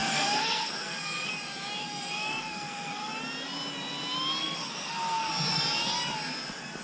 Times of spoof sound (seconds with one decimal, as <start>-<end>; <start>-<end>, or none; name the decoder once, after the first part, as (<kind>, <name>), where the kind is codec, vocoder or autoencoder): 0.0-1.3 (codec, SNAC); 1.8-3.1; 4.4-5.3